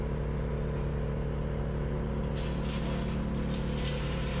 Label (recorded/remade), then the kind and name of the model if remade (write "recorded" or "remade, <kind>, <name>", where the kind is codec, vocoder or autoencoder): recorded